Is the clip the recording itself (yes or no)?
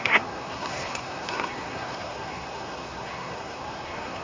no